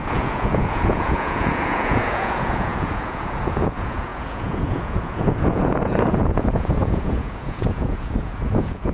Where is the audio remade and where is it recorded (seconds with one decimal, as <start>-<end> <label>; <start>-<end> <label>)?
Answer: 0.0-8.9 remade